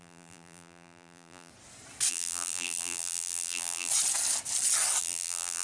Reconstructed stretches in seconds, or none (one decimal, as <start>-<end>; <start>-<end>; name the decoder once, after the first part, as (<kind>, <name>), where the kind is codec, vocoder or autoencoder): 0.0-1.5 (vocoder, BigVGAN v2); 2.1-3.9; 5.0-5.6